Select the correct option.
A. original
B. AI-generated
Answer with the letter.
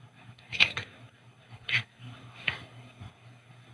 B